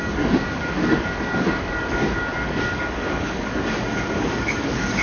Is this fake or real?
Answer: fake